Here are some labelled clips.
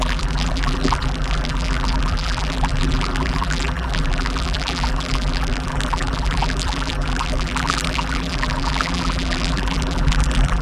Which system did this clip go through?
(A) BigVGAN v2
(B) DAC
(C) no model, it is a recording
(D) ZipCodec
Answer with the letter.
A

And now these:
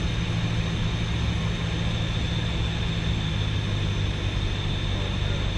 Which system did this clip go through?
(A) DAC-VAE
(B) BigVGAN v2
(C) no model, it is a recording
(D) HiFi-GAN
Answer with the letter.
C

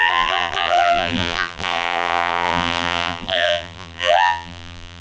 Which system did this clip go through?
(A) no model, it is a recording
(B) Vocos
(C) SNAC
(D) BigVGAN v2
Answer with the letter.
D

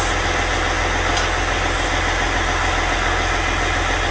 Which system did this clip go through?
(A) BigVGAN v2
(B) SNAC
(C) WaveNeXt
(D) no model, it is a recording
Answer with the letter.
D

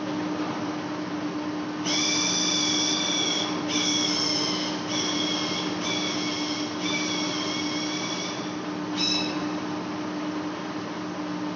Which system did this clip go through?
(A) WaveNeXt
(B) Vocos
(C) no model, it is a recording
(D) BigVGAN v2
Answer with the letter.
C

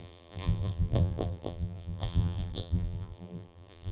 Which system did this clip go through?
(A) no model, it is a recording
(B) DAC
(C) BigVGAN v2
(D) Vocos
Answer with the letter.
C